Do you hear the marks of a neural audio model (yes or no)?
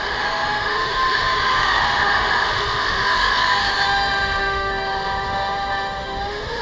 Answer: yes